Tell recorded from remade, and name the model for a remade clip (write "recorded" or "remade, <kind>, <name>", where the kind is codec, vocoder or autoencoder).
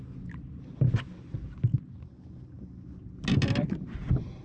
recorded